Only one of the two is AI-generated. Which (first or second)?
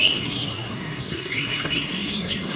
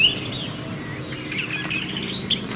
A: first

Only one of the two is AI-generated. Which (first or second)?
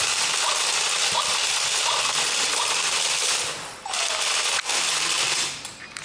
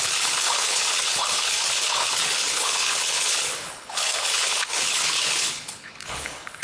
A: second